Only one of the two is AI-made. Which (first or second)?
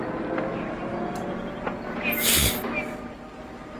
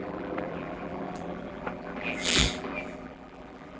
second